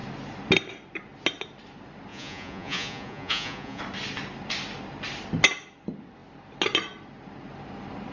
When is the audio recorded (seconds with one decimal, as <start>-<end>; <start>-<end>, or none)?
0.0-2.1; 3.8-8.1